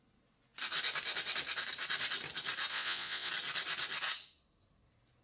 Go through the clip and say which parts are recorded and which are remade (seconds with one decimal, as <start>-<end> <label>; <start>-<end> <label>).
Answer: 0.0-2.7 recorded; 2.7-3.3 remade; 3.3-5.2 recorded